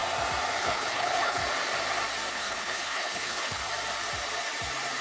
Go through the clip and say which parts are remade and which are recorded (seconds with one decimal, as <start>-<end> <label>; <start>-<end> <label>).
0.0-0.6 recorded; 0.6-1.4 remade; 1.4-2.3 recorded; 2.3-3.6 remade; 3.6-5.0 recorded

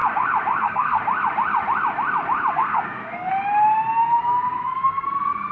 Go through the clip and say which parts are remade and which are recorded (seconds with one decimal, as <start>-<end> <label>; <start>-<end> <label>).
0.0-0.6 recorded; 0.6-1.0 remade; 1.0-2.5 recorded; 2.5-3.3 remade; 3.3-4.2 recorded; 4.2-5.5 remade

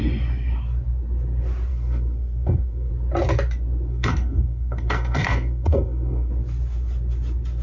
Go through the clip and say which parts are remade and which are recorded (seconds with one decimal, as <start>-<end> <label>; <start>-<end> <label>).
0.0-1.7 recorded; 1.7-2.9 remade; 2.9-3.9 recorded; 3.9-6.3 remade; 6.3-7.6 recorded

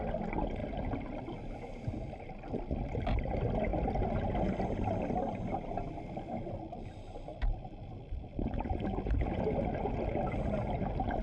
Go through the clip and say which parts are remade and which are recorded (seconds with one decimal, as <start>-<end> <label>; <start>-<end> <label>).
0.0-7.3 recorded; 7.3-8.7 remade; 8.7-11.2 recorded

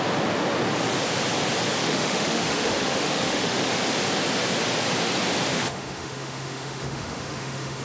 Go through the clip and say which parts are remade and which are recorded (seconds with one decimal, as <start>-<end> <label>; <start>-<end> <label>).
0.0-1.8 recorded; 1.8-3.7 remade; 3.7-5.5 recorded; 5.5-7.8 remade